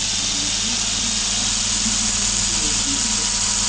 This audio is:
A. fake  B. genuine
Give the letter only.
B